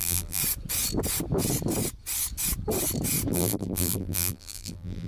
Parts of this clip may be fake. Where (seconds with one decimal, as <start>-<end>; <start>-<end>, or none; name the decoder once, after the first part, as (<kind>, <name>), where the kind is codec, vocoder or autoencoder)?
0.0-0.4 (vocoder, BigVGAN v2); 3.3-5.1